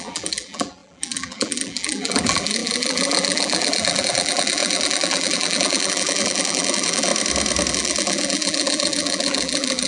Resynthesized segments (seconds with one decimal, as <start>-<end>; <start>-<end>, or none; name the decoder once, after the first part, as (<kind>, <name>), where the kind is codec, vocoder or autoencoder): 0.0-7.1 (vocoder, BigVGAN v2); 7.7-9.9